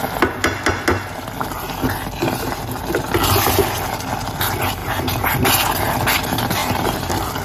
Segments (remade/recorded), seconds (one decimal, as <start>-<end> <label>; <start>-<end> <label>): 0.0-6.6 recorded; 6.6-7.4 remade